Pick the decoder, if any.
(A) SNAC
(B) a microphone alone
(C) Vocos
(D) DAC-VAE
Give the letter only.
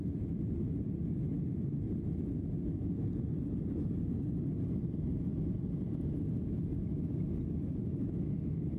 B